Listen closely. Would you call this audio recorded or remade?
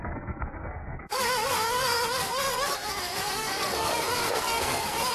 remade